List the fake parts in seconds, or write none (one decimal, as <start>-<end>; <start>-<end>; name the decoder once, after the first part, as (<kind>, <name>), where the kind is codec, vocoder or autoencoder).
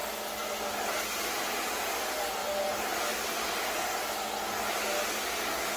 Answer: 2.4-3.8 (vocoder, BigVGAN v2)